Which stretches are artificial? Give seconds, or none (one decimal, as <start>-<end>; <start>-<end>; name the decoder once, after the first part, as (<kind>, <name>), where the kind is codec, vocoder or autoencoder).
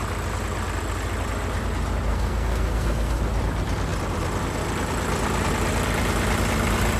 2.1-3.2 (codec, SNAC)